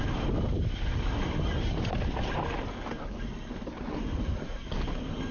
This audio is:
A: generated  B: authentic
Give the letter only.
B